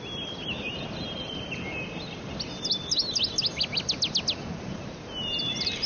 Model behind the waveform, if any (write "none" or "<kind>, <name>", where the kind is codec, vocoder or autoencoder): none